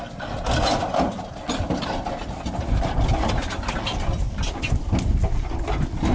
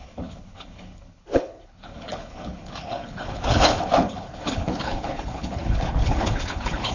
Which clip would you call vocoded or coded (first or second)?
second